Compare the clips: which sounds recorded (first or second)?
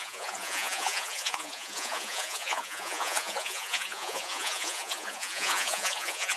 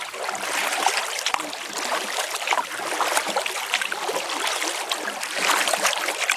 second